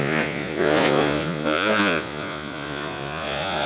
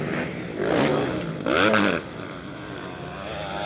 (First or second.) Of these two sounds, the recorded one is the second